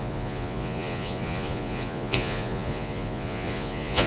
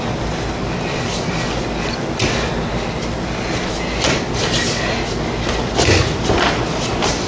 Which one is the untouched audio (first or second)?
second